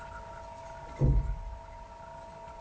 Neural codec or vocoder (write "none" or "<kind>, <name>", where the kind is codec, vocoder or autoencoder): none